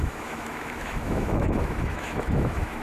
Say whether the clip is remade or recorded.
remade